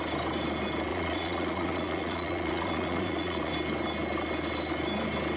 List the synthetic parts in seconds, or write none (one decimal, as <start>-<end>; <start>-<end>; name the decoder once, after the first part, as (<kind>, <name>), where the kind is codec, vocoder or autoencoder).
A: 0.9-3.5 (vocoder, Vocos)